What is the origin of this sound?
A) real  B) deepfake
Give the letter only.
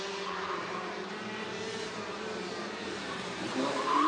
B